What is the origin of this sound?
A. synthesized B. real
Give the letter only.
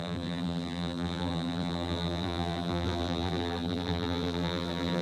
A